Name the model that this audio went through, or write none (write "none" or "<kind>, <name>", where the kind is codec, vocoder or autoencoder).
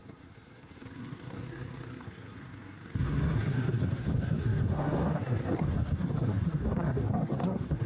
codec, SNAC